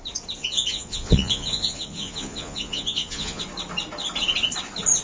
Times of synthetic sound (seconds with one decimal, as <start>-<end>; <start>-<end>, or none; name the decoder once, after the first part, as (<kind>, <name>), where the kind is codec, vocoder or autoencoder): 0.4-3.4 (vocoder, Vocos)